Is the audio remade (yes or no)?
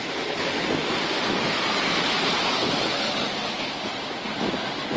no